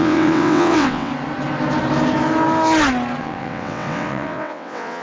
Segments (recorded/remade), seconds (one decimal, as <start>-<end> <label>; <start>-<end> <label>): 0.0-1.1 remade; 1.1-3.2 recorded; 3.2-5.0 remade